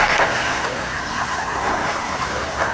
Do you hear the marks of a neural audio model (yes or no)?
yes